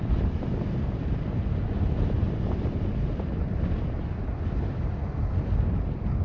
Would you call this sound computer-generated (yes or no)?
no